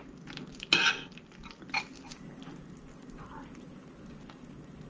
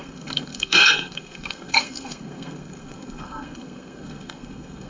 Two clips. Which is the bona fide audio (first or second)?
first